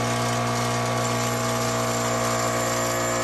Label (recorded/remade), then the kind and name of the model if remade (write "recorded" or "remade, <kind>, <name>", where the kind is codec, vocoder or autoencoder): recorded